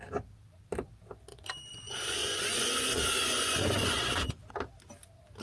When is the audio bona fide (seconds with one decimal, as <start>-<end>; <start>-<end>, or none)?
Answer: 0.0-1.3; 4.5-5.4